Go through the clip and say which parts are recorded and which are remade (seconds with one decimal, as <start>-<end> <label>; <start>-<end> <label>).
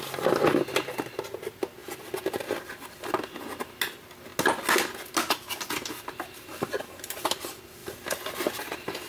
0.0-9.1 recorded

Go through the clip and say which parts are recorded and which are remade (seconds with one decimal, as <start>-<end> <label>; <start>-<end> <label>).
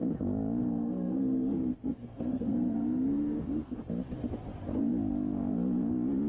0.0-0.6 recorded; 0.6-3.8 remade; 3.8-6.3 recorded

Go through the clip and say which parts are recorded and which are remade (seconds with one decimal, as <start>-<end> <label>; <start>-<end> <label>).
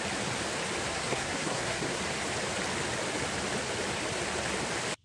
0.0-0.9 recorded; 0.9-2.0 remade; 2.0-5.0 recorded